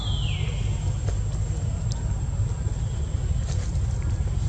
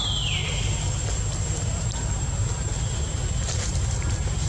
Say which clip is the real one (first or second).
first